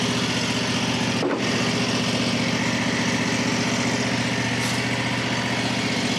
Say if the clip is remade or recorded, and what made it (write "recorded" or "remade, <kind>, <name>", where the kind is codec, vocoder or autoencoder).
recorded